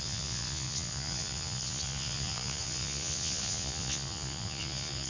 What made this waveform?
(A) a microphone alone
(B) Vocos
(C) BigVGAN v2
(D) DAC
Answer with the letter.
B